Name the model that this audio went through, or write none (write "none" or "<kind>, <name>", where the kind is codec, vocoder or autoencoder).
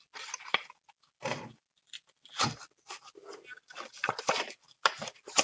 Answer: none